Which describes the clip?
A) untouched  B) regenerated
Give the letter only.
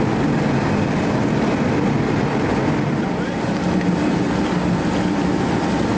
A